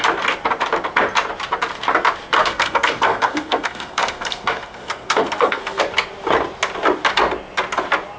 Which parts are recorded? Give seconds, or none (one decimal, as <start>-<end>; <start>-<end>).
0.0-2.4; 5.8-8.2